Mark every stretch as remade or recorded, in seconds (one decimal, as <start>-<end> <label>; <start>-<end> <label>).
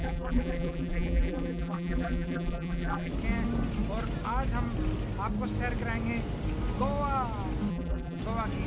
0.0-3.1 remade; 3.1-7.7 recorded; 7.7-8.2 remade; 8.2-8.7 recorded